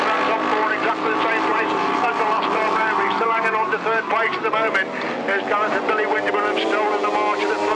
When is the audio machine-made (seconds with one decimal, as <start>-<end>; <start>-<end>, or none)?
1.5-6.1